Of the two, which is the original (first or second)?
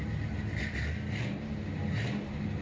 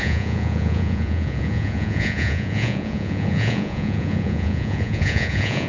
first